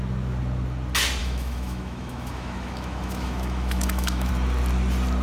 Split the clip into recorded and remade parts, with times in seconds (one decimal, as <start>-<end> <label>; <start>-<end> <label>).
0.0-1.2 recorded; 1.2-4.3 remade; 4.3-5.2 recorded